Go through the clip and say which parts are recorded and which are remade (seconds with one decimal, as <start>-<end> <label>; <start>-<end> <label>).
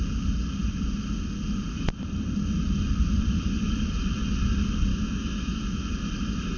0.0-4.9 recorded; 4.9-5.6 remade; 5.6-6.6 recorded